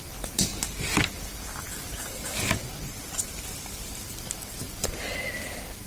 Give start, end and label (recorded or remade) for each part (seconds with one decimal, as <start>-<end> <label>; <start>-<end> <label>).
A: 0.0-5.9 recorded